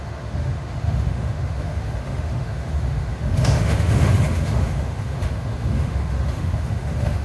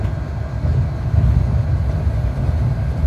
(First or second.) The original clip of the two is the second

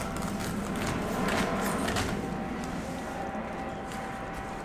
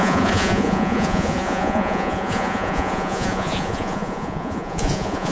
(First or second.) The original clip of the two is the first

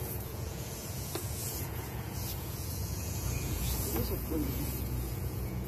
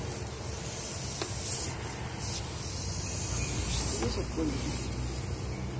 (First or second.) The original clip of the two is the second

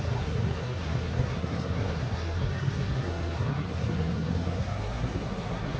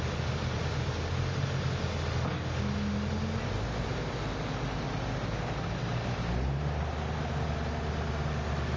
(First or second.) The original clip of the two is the second